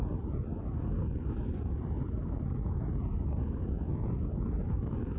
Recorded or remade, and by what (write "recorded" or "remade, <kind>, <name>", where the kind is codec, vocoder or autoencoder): recorded